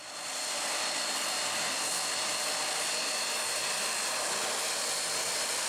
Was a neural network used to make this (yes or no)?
no